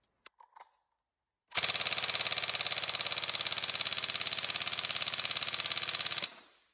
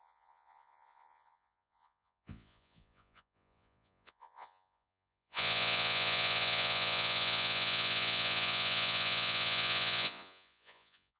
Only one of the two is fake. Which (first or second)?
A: second